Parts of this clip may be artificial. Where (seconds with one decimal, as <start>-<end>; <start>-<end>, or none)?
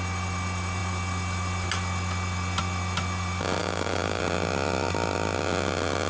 3.6-4.2